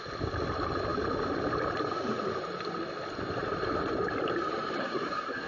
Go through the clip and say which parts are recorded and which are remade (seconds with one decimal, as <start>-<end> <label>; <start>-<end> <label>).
0.0-4.8 recorded; 4.8-5.5 remade